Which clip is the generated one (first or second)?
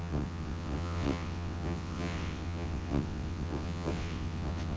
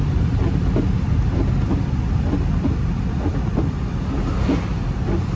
first